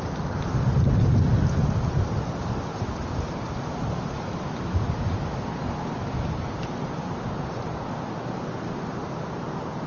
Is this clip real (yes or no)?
yes